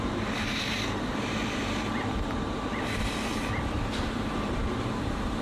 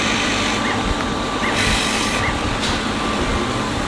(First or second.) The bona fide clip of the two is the second